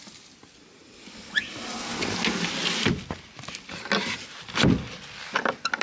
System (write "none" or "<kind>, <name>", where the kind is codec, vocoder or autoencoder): none